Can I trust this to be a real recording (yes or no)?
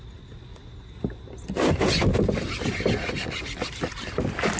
yes